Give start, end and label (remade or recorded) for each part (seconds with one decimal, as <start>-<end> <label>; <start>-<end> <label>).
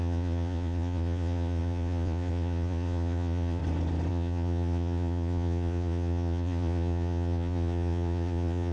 0.0-3.6 remade; 3.6-4.1 recorded; 4.1-8.7 remade